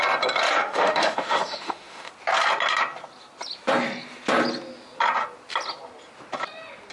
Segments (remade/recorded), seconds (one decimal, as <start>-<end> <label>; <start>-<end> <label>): 0.0-0.6 recorded; 0.6-2.1 remade; 2.1-6.9 recorded